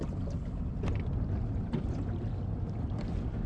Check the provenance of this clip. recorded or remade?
recorded